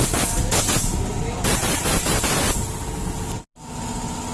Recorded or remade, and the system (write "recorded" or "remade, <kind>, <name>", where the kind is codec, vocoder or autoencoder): recorded